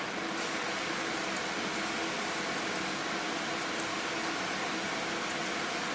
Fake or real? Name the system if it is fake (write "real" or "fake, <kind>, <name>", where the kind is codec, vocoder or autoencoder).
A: real